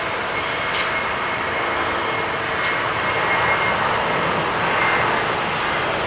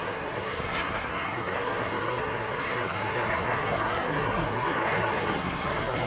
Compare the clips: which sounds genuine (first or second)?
first